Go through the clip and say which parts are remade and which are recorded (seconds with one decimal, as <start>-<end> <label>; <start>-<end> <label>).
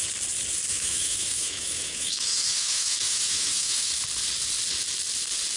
0.0-0.7 recorded; 0.7-3.9 remade; 3.9-5.6 recorded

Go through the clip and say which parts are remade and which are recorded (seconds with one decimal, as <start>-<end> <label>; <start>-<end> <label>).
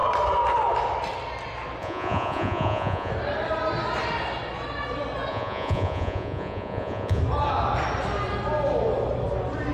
0.0-1.8 recorded; 1.8-3.1 remade; 3.1-5.3 recorded; 5.3-7.2 remade; 7.2-9.7 recorded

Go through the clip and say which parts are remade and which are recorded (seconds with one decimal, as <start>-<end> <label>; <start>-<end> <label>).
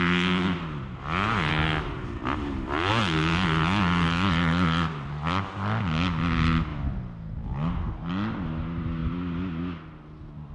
0.0-10.5 recorded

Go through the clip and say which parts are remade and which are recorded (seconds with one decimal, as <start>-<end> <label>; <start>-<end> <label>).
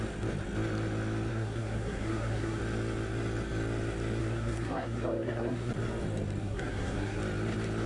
0.0-1.3 recorded; 1.3-2.6 remade; 2.6-4.2 recorded; 4.2-5.7 remade; 5.7-6.4 recorded; 6.4-7.2 remade; 7.2-7.9 recorded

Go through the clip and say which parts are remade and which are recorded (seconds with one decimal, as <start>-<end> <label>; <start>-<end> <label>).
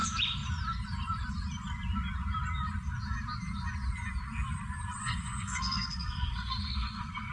0.0-5.0 recorded; 5.0-7.3 remade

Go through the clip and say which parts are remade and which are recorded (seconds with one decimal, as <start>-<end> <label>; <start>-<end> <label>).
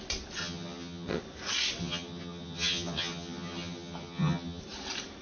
0.0-0.4 recorded; 0.4-1.2 remade; 1.2-1.8 recorded; 1.8-4.6 remade; 4.6-5.2 recorded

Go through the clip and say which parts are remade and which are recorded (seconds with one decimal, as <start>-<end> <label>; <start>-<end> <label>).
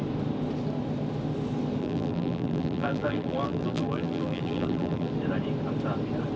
0.0-1.8 recorded; 1.8-5.1 remade; 5.1-6.4 recorded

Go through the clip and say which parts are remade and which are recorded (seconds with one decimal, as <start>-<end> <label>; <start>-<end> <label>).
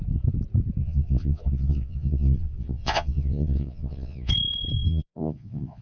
0.0-0.8 recorded; 0.8-4.3 remade; 4.3-4.9 recorded; 4.9-5.8 remade